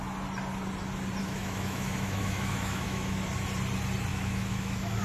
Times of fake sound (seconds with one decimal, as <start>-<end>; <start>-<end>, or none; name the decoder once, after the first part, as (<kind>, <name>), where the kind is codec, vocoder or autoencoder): 1.2-3.2 (autoencoder, DAC-VAE); 4.1-5.0